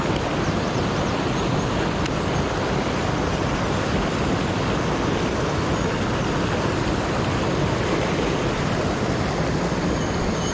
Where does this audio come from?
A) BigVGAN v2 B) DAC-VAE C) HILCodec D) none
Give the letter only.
D